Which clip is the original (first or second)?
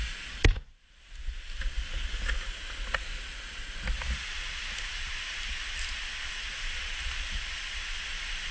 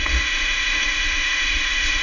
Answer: first